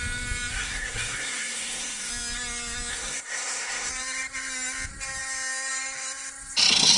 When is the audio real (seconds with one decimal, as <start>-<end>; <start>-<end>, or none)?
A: 0.0-0.5; 2.1-2.9; 3.9-7.0